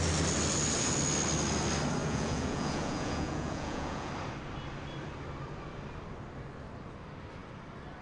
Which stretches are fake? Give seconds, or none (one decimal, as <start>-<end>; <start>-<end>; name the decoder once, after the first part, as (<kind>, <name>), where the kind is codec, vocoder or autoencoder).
2.0-4.1 (vocoder, Vocos)